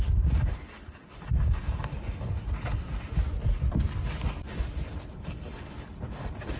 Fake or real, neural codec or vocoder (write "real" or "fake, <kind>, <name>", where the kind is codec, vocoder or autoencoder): real